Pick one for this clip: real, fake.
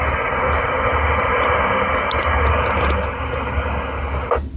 real